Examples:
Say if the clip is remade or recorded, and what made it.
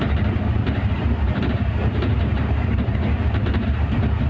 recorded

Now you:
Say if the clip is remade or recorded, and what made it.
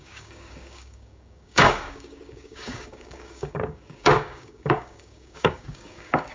remade, codec, DAC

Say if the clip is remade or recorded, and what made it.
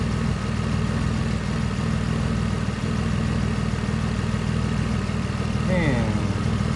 recorded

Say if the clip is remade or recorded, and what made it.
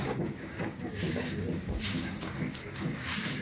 remade, codec, DAC